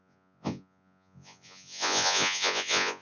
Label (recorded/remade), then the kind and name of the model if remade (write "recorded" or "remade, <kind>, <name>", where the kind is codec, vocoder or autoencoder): remade, vocoder, Vocos